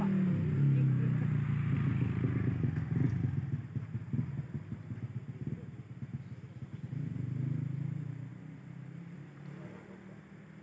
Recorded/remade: recorded